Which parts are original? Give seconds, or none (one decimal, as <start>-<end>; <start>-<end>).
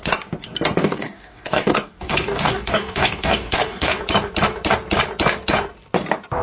0.0-0.8; 4.0-6.4